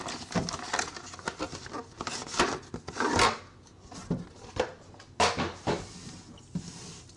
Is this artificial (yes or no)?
no